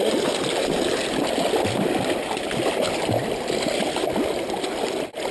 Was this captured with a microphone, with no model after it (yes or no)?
yes